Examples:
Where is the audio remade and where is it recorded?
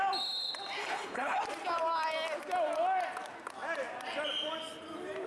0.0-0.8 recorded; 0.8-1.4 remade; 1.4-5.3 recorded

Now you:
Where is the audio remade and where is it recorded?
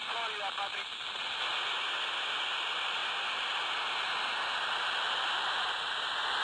0.0-6.4 recorded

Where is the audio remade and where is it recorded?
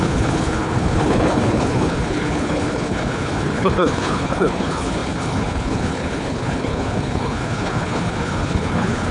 0.0-9.1 remade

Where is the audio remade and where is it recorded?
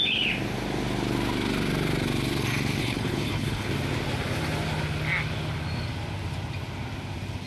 0.0-2.8 recorded; 2.8-3.7 remade; 3.7-7.5 recorded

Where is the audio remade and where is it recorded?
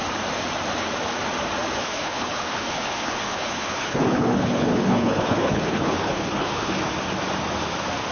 0.0-1.8 recorded; 1.8-6.7 remade; 6.7-8.1 recorded